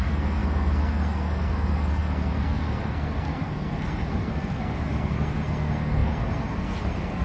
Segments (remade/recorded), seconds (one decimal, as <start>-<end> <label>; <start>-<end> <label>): 0.0-7.2 remade